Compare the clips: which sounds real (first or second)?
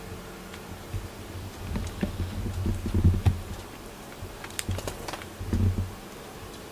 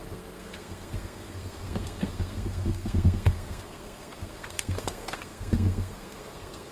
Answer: first